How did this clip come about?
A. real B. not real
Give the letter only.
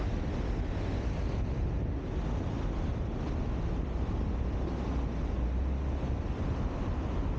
A